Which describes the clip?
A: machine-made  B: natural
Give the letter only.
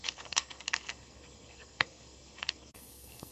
A